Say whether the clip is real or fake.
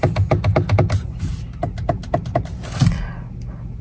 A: real